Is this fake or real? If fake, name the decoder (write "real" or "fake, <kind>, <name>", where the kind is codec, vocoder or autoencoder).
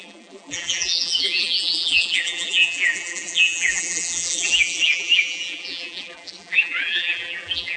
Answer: fake, vocoder, BigVGAN v2